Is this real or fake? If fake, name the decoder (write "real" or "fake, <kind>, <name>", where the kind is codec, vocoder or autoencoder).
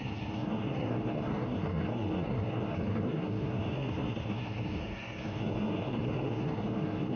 fake, codec, SNAC